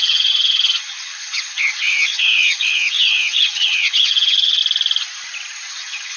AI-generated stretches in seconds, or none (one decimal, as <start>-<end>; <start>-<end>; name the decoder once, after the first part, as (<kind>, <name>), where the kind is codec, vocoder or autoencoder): 0.0-4.6 (vocoder, HiFi-GAN); 5.7-6.2